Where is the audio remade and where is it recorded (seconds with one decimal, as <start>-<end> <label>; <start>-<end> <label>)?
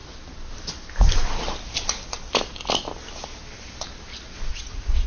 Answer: 0.0-4.5 recorded; 4.5-5.1 remade